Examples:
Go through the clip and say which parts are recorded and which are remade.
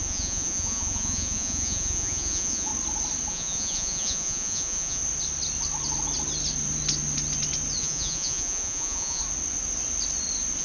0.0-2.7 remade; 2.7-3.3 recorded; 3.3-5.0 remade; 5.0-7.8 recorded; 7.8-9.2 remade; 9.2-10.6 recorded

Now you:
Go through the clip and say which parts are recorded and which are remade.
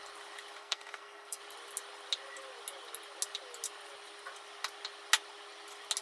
0.0-0.6 recorded; 0.6-1.4 remade; 1.4-6.0 recorded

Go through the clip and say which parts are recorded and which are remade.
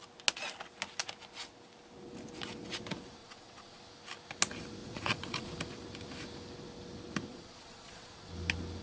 0.0-3.2 recorded; 3.2-3.8 remade; 3.8-4.8 recorded; 4.8-5.5 remade; 5.5-7.3 recorded; 7.3-8.3 remade; 8.3-8.8 recorded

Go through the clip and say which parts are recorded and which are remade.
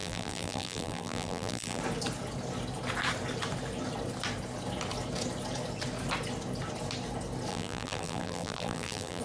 0.0-1.8 remade; 1.8-7.5 recorded; 7.5-9.2 remade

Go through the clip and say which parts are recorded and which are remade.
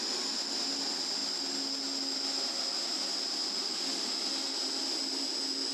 0.0-5.7 recorded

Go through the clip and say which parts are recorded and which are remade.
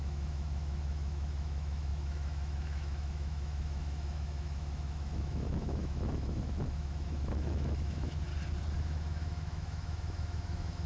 0.0-8.3 remade; 8.3-8.8 recorded; 8.8-10.9 remade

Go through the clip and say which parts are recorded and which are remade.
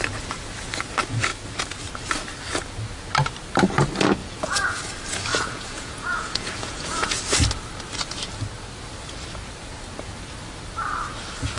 0.0-4.2 recorded; 4.2-4.8 remade; 4.8-5.3 recorded; 5.3-7.1 remade; 7.1-11.6 recorded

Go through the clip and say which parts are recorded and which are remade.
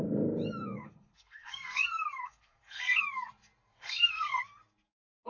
0.0-0.6 recorded; 0.6-3.0 remade; 3.0-3.7 recorded; 3.7-4.4 remade; 4.4-5.3 recorded